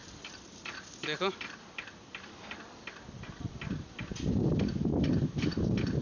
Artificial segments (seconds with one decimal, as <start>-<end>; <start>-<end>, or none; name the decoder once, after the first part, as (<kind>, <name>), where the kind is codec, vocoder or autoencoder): 0.0-3.5 (vocoder, BigVGAN v2); 4.9-5.6